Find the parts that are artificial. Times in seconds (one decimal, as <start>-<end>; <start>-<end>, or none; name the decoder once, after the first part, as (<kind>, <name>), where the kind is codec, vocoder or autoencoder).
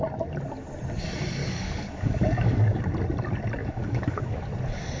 1.4-2.8 (codec, DAC); 3.6-4.4